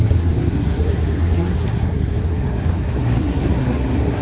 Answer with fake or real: fake